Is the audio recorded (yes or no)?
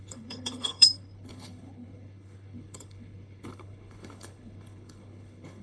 no